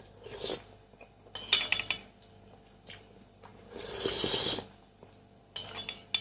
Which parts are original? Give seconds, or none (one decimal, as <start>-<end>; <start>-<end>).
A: 0.0-6.2

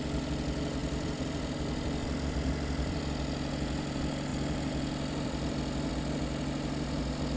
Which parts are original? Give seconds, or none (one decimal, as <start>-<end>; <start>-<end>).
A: 0.0-0.8; 3.0-4.3; 5.9-7.4

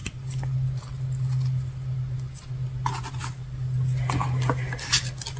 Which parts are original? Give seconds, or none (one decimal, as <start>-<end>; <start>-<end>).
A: 0.0-5.4